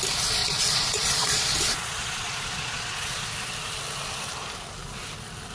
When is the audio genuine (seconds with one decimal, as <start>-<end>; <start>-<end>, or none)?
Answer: 0.0-0.4; 3.3-5.5